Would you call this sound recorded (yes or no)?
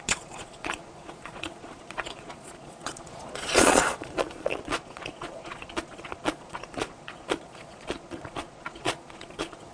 no